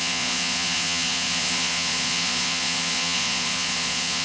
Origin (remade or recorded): remade